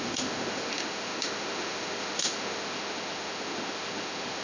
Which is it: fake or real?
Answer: fake